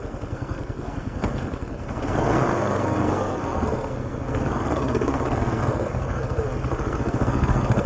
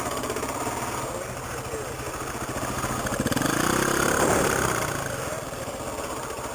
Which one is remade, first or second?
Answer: first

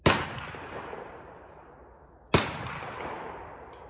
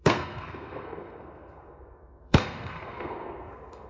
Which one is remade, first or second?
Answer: second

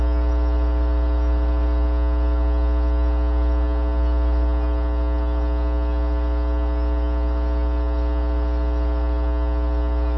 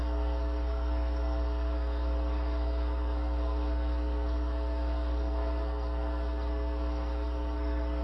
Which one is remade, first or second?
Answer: second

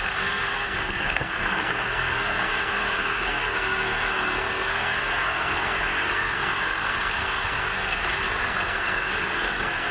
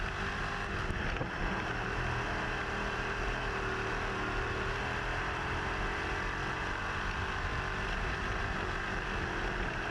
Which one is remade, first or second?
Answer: first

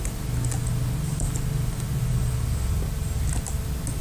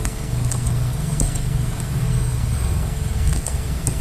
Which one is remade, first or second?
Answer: second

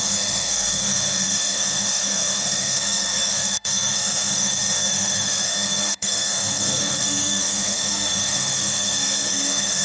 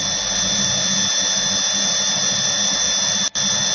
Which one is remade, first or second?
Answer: first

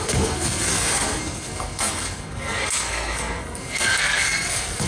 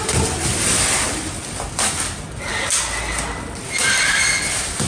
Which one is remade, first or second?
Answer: first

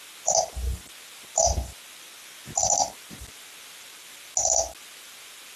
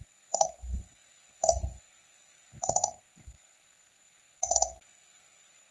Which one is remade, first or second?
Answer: second